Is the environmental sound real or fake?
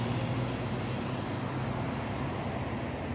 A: real